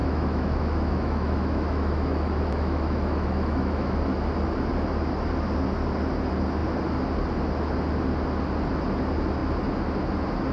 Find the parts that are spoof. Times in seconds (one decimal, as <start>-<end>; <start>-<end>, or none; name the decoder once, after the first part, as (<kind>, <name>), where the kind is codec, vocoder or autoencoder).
0.0-4.0 (autoencoder, DAC-VAE)